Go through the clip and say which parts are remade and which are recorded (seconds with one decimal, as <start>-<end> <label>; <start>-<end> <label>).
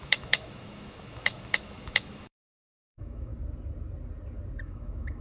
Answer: 0.0-3.3 remade; 3.3-4.6 recorded; 4.6-5.2 remade